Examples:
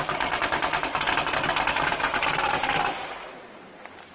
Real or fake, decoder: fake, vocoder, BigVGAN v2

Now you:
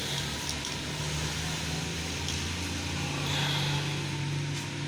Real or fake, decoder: real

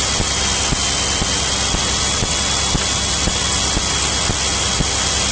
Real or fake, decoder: real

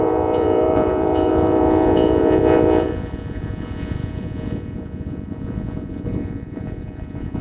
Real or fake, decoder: fake, vocoder, Vocos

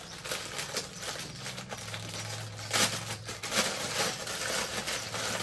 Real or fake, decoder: real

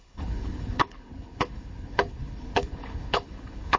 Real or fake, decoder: fake, codec, HILCodec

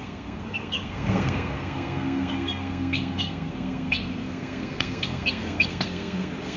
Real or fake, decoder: fake, codec, SNAC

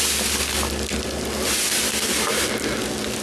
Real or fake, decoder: real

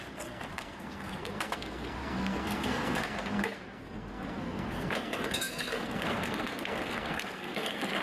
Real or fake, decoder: fake, codec, SNAC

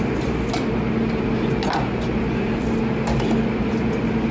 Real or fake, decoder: real